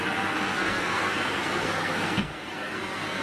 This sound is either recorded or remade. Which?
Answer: remade